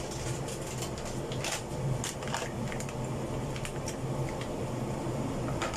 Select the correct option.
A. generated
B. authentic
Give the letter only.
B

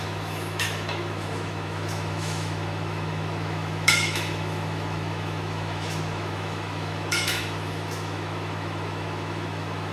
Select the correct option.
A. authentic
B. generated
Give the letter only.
B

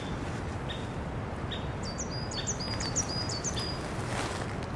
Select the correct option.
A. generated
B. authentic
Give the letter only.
B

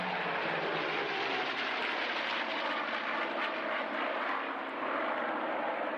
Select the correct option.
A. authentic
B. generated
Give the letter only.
A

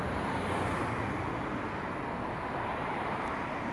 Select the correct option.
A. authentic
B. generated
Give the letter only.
A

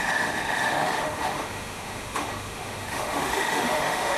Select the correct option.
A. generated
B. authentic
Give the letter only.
A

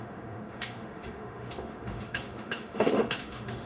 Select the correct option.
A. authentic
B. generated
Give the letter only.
B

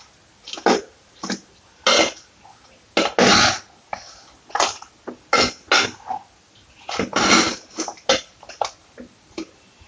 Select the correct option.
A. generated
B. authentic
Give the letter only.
B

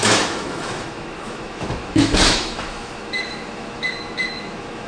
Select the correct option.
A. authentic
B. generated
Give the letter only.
B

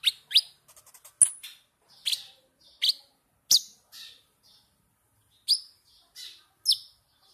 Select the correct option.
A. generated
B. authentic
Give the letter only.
B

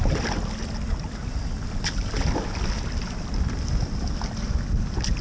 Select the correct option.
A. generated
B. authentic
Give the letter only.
B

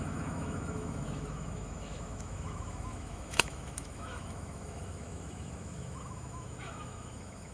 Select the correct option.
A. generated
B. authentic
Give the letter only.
A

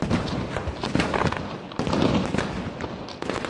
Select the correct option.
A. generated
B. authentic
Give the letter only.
B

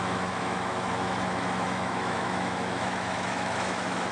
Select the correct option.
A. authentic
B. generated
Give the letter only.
B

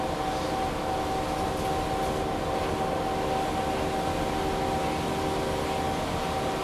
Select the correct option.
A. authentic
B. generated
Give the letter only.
A